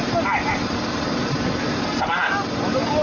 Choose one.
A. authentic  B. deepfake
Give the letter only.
B